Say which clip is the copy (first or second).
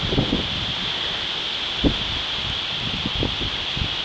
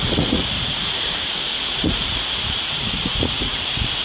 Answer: second